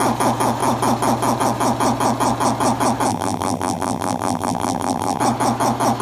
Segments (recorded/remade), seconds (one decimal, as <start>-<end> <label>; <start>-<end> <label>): 0.0-3.1 recorded; 3.1-5.2 remade; 5.2-6.0 recorded